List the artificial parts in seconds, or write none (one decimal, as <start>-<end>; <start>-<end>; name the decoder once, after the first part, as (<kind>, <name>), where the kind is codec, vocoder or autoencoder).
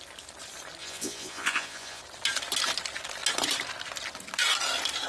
0.8-2.0 (vocoder, Vocos)